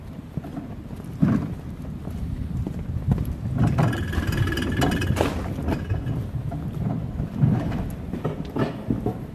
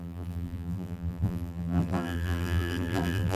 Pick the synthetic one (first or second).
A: second